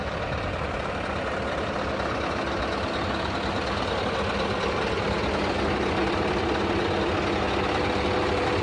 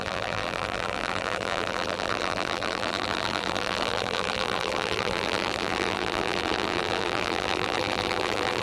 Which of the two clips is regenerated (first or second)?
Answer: second